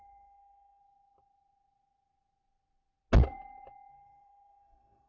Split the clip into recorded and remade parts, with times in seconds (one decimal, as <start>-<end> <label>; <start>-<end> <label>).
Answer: 0.0-0.8 remade; 0.8-3.9 recorded; 3.9-5.1 remade